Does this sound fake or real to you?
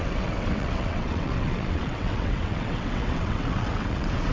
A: fake